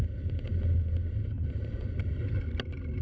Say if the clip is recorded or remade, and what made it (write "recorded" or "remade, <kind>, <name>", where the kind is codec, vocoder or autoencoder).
recorded